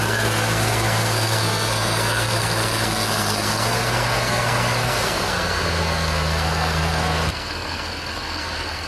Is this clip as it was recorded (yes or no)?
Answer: no